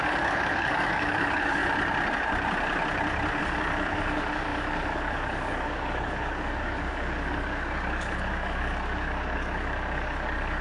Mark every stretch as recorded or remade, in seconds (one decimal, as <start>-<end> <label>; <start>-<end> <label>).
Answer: 0.0-1.6 remade; 1.6-3.4 recorded; 3.4-10.6 remade